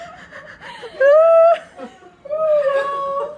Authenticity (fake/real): fake